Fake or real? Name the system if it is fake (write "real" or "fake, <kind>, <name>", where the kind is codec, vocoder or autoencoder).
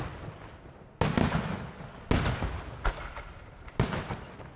real